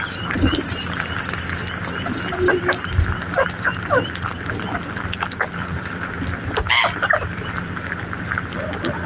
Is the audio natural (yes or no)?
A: yes